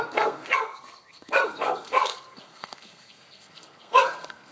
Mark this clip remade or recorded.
remade